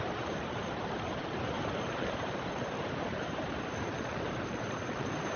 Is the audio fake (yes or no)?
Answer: yes